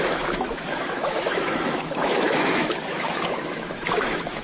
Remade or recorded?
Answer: remade